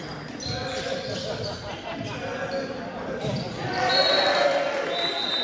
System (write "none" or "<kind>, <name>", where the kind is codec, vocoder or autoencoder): vocoder, BigVGAN v2